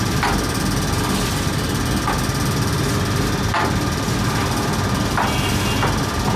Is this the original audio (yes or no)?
yes